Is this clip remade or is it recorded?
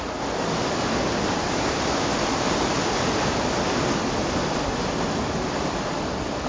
recorded